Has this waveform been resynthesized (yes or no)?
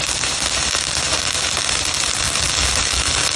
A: no